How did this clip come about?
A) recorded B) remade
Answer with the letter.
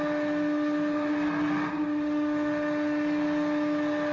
A